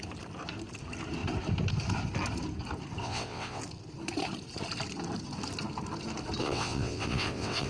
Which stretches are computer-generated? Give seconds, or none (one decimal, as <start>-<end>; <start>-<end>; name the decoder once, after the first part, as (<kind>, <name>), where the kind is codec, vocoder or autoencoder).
3.0-3.6 (vocoder, WaveNeXt); 6.4-7.7